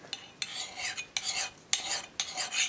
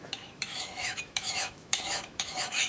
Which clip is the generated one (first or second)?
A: second